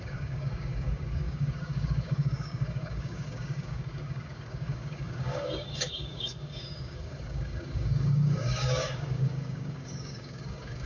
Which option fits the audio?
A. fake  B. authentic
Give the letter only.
A